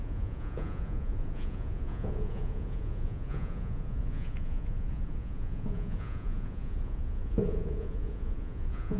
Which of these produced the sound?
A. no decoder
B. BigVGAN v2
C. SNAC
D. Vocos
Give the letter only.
D